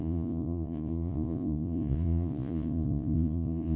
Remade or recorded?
remade